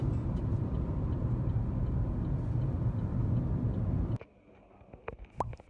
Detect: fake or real real